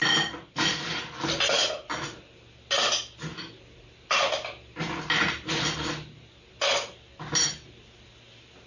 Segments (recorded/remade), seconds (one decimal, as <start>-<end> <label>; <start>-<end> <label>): 0.0-8.7 recorded